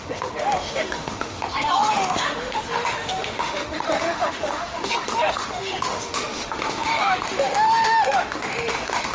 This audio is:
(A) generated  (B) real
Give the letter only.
A